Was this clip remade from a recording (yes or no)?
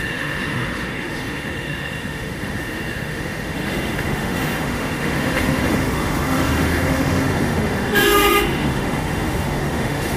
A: yes